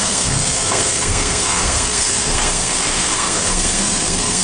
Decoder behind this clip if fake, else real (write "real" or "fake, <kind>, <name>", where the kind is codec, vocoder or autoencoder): fake, codec, SNAC